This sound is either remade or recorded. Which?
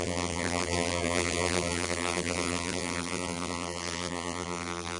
remade